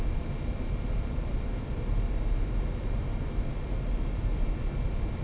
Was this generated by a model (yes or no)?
no